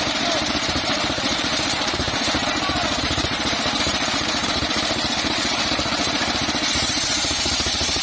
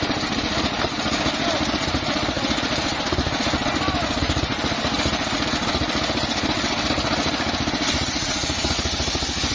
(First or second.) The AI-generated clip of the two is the first